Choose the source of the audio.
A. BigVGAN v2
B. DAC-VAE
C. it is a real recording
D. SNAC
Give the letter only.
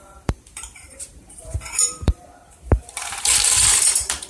A